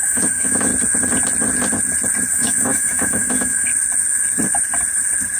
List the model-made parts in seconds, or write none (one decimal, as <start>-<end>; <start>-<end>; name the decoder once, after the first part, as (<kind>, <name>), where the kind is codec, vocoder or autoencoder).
0.0-0.7 (autoencoder, DAC-VAE); 2.3-3.7